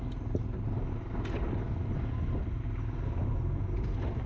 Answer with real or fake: real